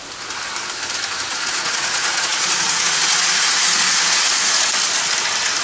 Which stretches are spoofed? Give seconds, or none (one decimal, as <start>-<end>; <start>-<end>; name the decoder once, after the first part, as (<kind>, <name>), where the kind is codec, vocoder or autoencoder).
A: 1.3-4.7 (vocoder, Vocos)